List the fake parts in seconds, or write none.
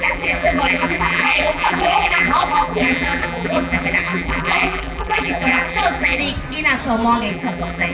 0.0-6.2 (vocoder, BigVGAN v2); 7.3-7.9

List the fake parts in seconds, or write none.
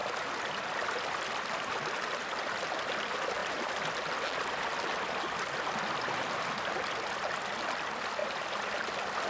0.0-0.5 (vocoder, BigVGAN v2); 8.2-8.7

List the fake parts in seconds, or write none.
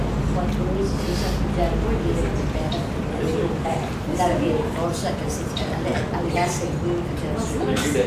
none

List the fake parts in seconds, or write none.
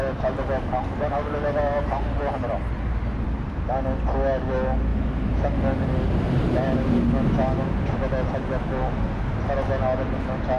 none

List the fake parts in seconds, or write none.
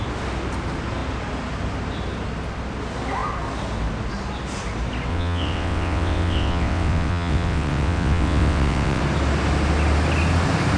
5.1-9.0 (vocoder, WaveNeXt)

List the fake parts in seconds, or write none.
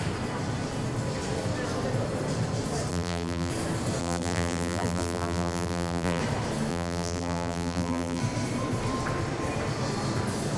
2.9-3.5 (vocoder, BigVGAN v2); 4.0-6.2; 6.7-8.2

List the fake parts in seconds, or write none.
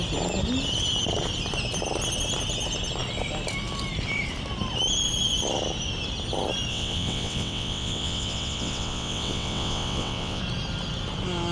6.7-10.4 (vocoder, WaveNeXt)